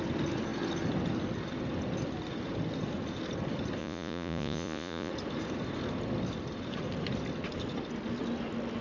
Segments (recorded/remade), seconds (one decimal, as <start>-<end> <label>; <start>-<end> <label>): 0.0-3.8 recorded; 3.8-5.1 remade; 5.1-8.8 recorded